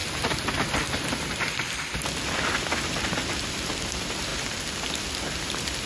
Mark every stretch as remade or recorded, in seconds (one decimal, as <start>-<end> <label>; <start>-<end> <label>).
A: 0.0-3.5 recorded; 3.5-4.3 remade; 4.3-5.2 recorded; 5.2-5.9 remade